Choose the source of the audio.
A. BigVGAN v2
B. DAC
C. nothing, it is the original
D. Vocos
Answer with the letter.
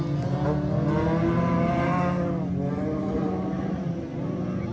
C